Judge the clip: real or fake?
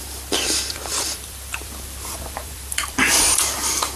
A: fake